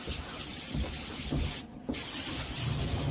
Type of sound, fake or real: real